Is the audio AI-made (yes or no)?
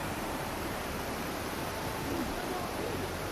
yes